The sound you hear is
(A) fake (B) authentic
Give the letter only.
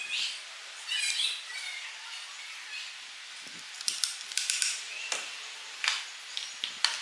B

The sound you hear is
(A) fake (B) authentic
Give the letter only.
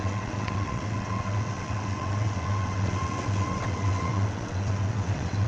A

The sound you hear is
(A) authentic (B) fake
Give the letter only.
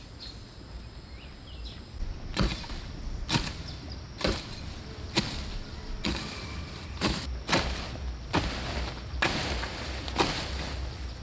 A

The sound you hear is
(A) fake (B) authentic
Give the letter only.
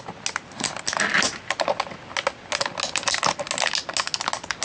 B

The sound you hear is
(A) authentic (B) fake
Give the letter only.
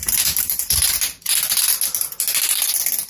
A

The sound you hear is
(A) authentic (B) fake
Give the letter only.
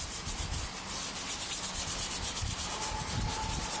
A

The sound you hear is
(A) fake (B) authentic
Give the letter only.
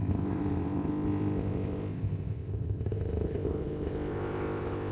A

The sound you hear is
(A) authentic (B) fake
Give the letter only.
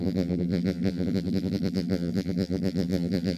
B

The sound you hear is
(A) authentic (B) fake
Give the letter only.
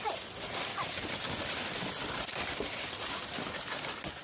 B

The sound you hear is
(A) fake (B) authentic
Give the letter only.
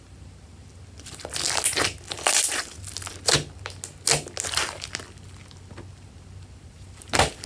B